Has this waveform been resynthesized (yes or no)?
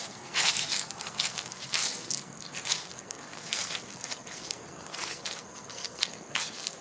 yes